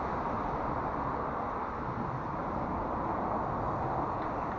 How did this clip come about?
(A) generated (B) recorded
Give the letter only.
B